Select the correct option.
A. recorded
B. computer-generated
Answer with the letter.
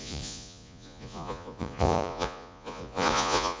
B